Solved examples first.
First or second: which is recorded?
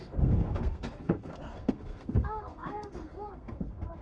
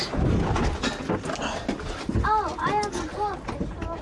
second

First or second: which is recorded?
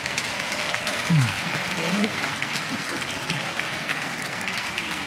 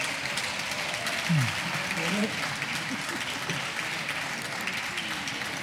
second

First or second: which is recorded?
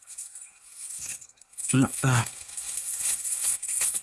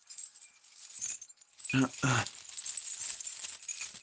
second